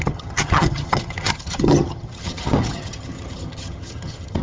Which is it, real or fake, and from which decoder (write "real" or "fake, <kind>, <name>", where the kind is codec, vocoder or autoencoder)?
fake, vocoder, HiFi-GAN